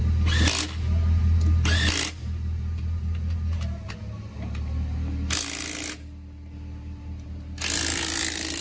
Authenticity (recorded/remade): recorded